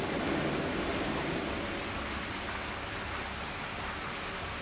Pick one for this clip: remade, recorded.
recorded